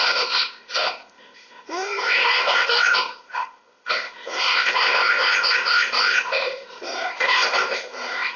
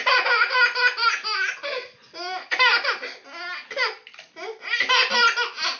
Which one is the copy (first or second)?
first